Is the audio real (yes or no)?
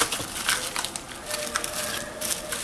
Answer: yes